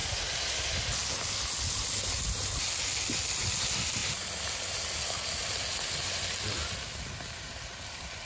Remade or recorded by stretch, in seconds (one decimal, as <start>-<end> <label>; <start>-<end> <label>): 0.0-8.3 recorded